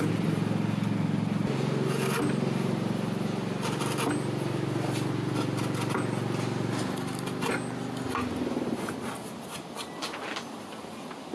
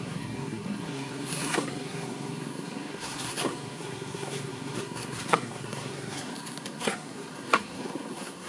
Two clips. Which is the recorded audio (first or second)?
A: first